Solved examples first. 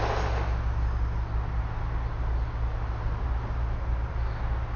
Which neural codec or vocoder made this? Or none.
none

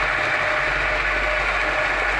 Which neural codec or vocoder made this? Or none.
none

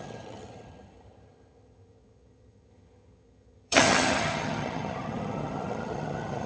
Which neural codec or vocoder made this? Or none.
vocoder, HiFi-GAN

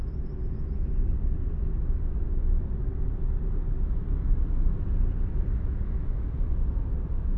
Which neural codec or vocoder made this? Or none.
none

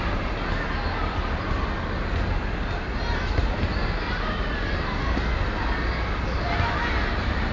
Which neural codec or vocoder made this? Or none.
none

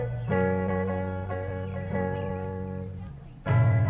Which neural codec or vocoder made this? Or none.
vocoder, Vocos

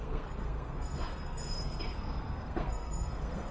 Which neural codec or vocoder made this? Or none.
codec, SNAC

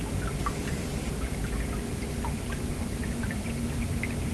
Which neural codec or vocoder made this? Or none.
none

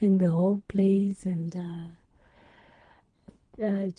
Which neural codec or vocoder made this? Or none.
codec, HILCodec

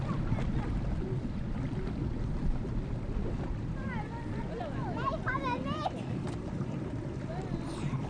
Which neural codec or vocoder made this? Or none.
none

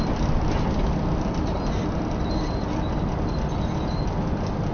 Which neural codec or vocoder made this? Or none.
none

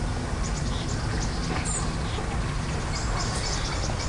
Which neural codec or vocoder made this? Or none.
none